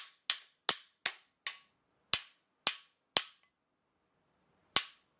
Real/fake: real